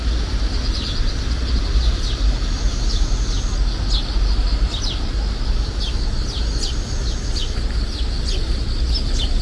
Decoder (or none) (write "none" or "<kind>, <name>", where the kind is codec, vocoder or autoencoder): none